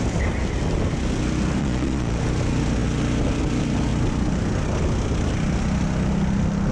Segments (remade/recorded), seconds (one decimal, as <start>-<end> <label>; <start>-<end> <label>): 0.0-1.6 recorded; 1.6-2.2 remade; 2.2-6.7 recorded